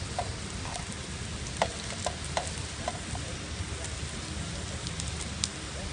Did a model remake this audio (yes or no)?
no